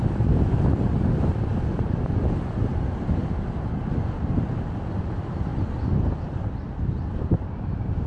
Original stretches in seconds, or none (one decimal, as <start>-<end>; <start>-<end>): 1.5-2.7; 3.2-5.0